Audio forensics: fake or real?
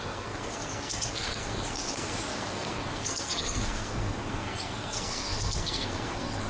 fake